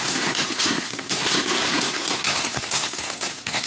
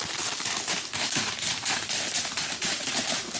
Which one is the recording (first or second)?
second